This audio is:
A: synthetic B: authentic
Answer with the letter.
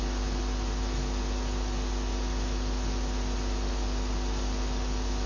B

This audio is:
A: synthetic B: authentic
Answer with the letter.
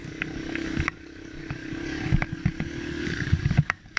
A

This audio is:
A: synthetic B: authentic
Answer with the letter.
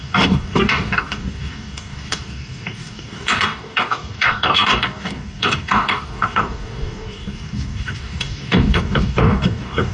A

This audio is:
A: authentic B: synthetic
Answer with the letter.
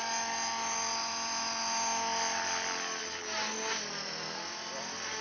A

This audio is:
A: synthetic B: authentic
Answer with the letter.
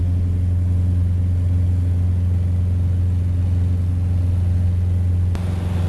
B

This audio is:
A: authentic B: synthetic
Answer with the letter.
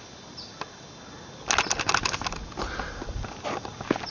A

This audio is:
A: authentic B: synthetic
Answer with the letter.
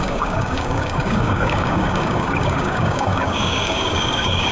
B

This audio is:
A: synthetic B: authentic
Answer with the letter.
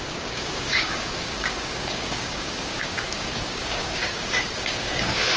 A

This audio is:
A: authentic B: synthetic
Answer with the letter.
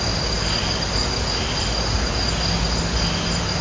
A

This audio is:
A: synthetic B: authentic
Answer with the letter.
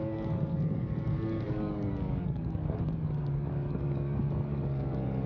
A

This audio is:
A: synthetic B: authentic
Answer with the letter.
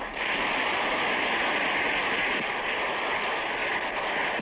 B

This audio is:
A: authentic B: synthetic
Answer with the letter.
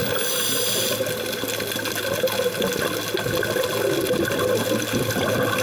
A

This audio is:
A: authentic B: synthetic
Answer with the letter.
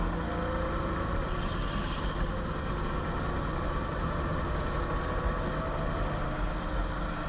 A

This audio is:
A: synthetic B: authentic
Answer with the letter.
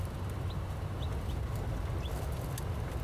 B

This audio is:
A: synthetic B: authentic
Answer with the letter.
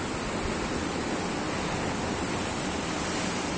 B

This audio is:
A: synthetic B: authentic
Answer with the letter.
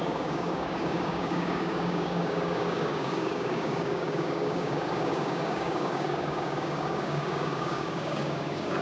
A